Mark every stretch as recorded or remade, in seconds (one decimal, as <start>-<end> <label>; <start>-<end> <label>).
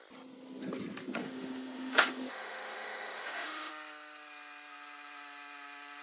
0.0-1.2 recorded; 1.2-3.7 remade; 3.7-6.0 recorded